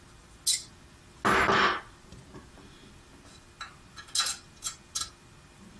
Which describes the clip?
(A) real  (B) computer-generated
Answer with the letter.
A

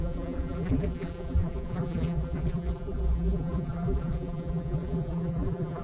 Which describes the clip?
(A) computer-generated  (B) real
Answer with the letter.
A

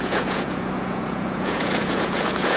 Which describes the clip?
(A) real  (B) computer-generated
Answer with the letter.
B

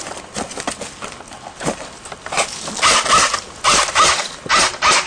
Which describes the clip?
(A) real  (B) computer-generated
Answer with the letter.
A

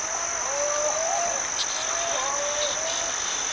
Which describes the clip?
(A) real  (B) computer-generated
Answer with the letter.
A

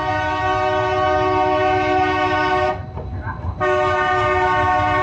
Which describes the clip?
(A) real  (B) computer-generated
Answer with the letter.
A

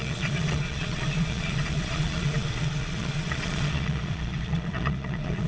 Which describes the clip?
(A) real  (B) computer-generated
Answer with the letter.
B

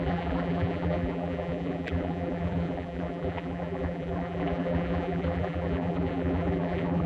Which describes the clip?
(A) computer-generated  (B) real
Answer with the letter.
A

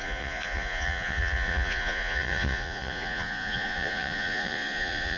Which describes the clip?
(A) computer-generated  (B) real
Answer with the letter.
A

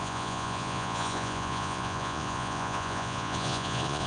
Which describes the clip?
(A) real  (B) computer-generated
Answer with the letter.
B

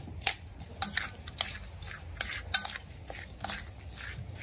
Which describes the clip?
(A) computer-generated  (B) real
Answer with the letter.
B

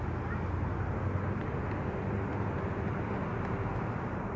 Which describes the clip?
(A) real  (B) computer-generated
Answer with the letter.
A